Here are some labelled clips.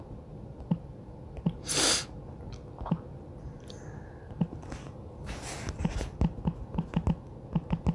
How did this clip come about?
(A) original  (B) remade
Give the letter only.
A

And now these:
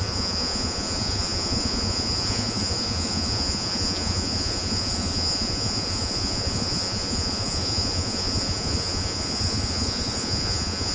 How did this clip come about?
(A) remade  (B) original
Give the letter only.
A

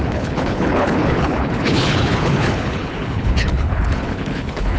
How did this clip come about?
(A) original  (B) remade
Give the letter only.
B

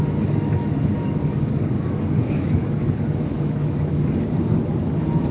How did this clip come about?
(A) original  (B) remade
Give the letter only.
B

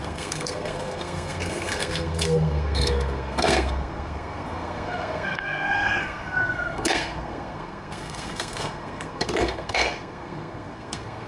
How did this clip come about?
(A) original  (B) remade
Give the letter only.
B